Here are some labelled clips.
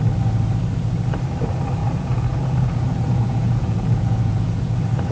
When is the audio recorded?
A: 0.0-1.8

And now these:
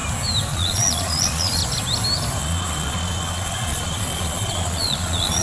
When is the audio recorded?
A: 0.0-0.5; 1.6-2.4

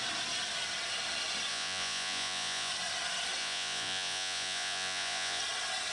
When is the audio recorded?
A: 0.0-1.5; 2.7-3.4; 5.4-5.9

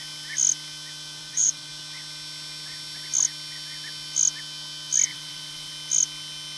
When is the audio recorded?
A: 0.0-1.2; 1.7-5.1; 5.7-6.6

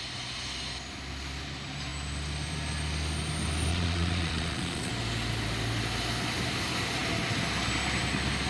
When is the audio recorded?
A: 0.0-3.7; 4.9-8.5

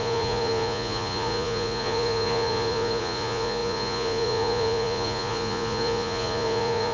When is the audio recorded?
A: none